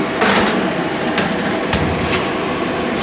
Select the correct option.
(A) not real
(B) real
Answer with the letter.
B